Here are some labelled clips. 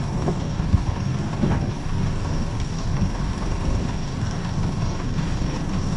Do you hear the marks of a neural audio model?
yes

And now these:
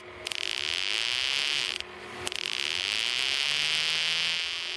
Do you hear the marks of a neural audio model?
no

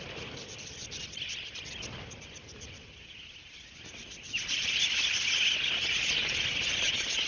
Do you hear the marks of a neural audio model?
no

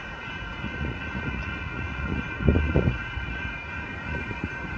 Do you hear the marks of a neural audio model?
yes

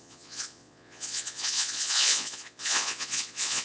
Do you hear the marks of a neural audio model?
yes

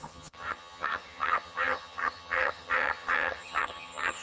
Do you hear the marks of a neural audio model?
yes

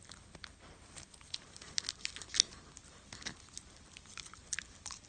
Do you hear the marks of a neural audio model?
no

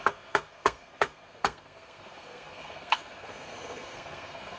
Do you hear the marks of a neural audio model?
yes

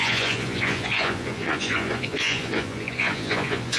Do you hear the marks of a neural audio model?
yes